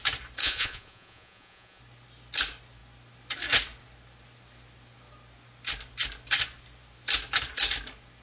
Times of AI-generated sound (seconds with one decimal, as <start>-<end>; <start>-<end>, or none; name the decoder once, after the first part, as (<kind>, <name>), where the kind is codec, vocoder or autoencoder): 0.4-1.8 (vocoder, Vocos)